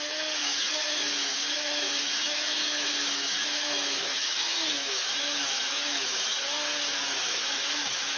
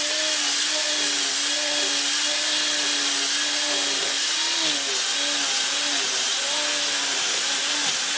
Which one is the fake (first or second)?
first